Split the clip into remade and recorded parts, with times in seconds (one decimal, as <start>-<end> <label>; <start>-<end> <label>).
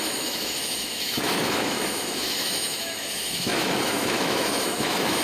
0.0-5.2 remade